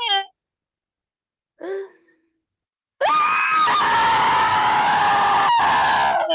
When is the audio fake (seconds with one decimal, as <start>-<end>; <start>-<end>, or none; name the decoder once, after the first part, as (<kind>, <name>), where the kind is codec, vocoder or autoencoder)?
1.6-3.9 (autoencoder, DAC-VAE); 4.5-5.0